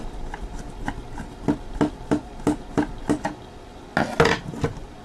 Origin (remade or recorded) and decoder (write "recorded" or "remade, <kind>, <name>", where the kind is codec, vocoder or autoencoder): recorded